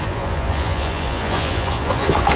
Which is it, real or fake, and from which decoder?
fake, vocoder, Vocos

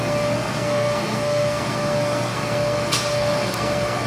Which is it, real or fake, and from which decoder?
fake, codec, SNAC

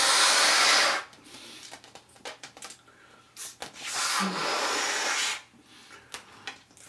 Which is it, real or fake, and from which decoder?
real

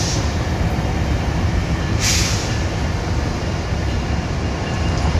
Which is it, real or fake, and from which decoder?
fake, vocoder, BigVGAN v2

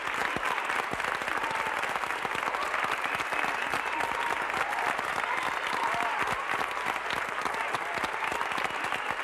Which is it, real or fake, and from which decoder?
real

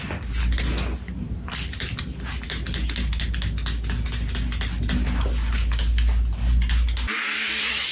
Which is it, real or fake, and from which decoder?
real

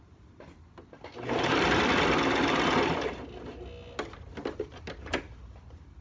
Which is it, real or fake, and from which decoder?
real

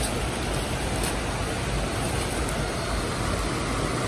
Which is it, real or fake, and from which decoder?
real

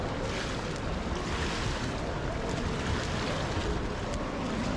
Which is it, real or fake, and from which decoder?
real